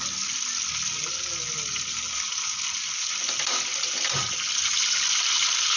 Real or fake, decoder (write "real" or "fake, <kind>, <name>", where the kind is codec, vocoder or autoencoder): real